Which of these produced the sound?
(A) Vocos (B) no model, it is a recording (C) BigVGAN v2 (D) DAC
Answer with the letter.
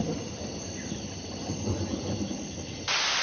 B